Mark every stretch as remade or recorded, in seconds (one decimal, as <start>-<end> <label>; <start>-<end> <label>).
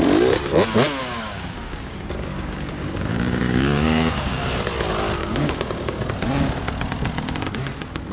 0.0-1.0 recorded; 1.0-4.4 remade; 4.4-5.2 recorded; 5.2-6.0 remade; 6.0-8.1 recorded